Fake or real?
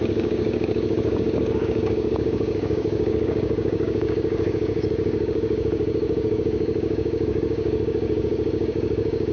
fake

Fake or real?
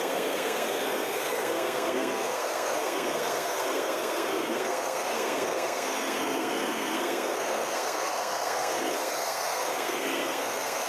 fake